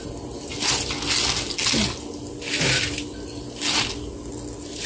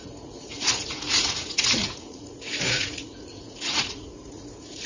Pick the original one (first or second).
first